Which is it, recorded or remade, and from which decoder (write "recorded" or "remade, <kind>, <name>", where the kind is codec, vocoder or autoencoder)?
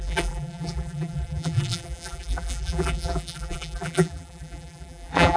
remade, vocoder, BigVGAN v2